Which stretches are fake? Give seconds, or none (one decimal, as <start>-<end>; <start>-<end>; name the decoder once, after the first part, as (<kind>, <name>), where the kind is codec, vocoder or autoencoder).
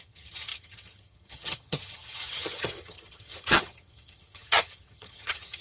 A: 0.0-5.6 (vocoder, HiFi-GAN)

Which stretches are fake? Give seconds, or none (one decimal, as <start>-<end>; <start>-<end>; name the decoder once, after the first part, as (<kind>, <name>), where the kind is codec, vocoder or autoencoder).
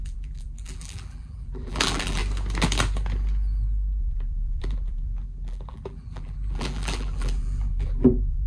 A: 0.0-2.2 (vocoder, BigVGAN v2); 4.0-8.5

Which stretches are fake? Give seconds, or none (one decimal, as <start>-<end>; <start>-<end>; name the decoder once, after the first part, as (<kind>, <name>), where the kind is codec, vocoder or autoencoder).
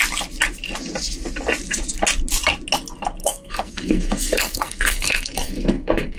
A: 3.2-6.2 (codec, SNAC)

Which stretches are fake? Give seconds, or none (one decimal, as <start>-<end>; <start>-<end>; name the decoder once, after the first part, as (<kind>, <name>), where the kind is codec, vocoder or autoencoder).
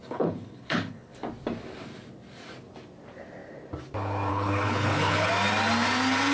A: 0.0-1.1 (codec, HILCodec); 4.3-5.3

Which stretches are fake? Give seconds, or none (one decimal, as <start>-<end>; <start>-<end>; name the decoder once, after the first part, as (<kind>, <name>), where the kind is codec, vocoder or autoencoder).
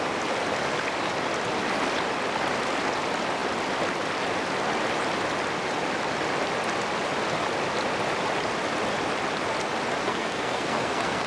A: 10.0-11.3 (codec, SNAC)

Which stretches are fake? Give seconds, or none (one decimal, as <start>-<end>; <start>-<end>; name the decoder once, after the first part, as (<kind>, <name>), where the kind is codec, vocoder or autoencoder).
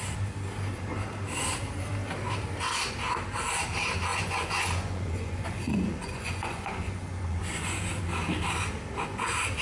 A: 4.1-8.0 (vocoder, Vocos)